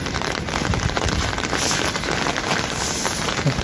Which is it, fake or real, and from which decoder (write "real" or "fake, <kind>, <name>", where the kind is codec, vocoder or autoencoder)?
fake, vocoder, BigVGAN v2